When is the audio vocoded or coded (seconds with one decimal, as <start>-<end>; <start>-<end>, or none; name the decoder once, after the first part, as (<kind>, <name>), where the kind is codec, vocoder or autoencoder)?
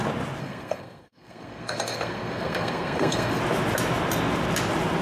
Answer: 0.4-3.4 (codec, SNAC)